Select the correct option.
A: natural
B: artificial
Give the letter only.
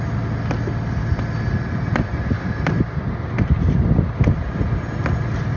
A